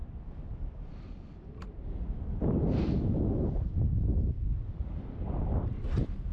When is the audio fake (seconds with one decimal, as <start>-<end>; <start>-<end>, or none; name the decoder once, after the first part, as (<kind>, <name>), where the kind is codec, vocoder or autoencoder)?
none

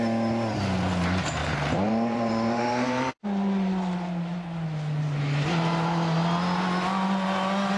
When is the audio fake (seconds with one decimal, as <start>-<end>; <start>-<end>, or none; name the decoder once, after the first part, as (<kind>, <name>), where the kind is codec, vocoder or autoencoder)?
1.4-3.1 (vocoder, BigVGAN v2)

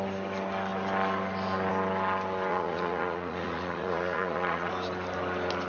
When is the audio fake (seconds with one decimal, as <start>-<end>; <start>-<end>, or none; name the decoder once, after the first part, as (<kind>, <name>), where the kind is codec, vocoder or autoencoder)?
2.5-4.7 (vocoder, Vocos)

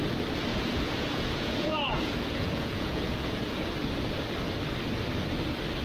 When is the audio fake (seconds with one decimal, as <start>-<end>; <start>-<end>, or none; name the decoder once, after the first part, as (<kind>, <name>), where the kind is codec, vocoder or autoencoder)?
0.5-3.6 (vocoder, Vocos)

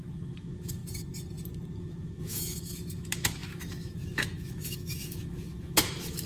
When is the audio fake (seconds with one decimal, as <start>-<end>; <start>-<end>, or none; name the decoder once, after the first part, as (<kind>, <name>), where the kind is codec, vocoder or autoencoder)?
0.0-0.8 (autoencoder, DAC-VAE); 1.8-6.3

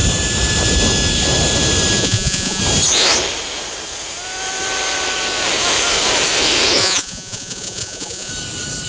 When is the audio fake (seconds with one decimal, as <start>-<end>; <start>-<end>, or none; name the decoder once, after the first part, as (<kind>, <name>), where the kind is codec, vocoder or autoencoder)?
2.0-2.6 (vocoder, Vocos); 6.8-8.3

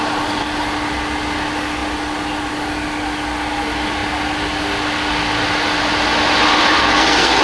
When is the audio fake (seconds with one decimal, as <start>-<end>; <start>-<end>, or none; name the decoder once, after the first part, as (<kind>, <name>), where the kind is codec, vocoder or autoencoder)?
6.8-7.4 (codec, SNAC)

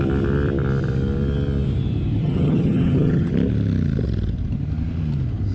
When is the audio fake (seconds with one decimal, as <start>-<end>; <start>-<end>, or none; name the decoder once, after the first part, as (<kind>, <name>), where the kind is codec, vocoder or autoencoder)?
2.2-3.3 (vocoder, HiFi-GAN)